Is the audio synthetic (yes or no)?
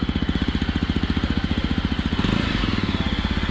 no